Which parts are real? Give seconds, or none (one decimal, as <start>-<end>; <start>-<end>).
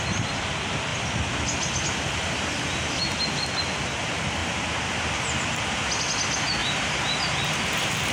0.0-4.4; 5.4-6.6